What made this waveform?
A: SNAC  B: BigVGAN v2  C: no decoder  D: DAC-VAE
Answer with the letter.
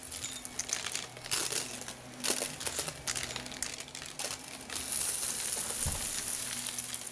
C